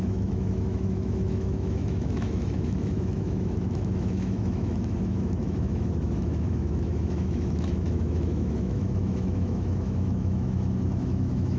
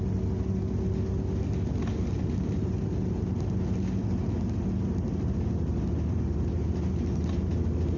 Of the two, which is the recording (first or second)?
second